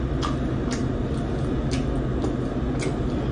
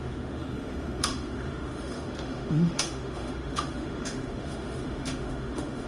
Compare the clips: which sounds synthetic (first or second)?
second